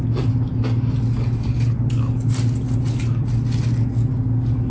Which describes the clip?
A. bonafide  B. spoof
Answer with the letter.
A